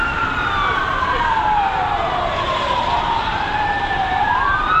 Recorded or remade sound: remade